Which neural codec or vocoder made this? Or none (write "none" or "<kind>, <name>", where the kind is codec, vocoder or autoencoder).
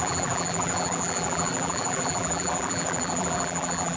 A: vocoder, BigVGAN v2